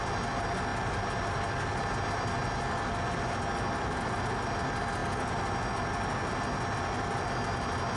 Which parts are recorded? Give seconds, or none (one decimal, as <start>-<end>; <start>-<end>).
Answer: 0.0-8.0